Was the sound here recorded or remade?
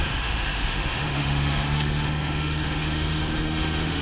remade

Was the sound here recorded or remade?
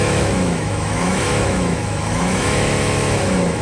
remade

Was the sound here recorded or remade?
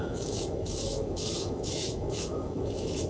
remade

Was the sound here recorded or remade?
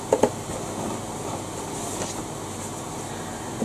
recorded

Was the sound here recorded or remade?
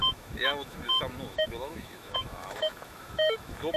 remade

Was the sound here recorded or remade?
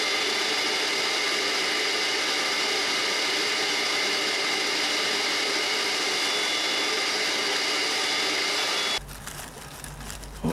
recorded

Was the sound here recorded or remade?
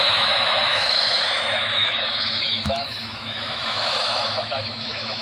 remade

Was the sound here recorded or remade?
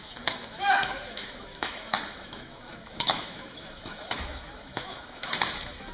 remade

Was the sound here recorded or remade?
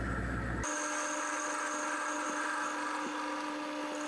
recorded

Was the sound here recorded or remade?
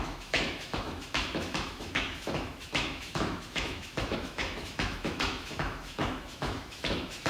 remade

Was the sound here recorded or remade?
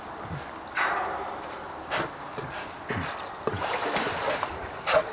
recorded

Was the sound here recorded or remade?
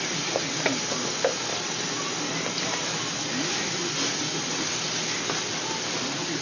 recorded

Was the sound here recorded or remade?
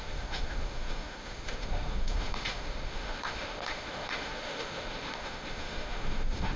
remade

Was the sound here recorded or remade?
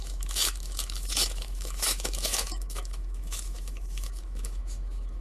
remade